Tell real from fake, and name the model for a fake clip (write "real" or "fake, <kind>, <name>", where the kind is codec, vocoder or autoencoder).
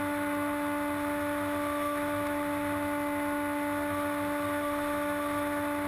real